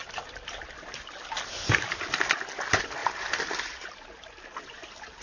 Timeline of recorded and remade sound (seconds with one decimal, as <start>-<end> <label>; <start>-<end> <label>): 0.0-3.0 recorded; 3.0-4.6 remade; 4.6-5.2 recorded